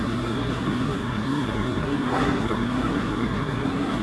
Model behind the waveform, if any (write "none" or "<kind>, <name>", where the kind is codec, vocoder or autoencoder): codec, SNAC